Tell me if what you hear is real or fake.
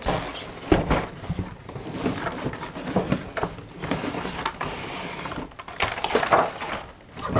real